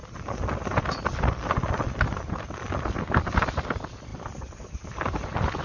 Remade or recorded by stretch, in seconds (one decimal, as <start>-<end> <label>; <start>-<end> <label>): 0.0-5.6 recorded